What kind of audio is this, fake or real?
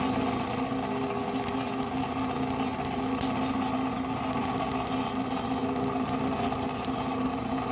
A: real